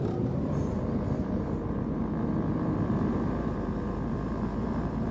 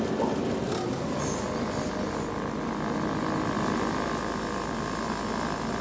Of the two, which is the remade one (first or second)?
first